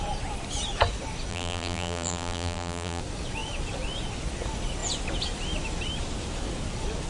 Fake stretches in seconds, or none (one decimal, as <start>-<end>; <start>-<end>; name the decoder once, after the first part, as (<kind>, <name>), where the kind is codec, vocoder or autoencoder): 1.3-3.0 (vocoder, BigVGAN v2)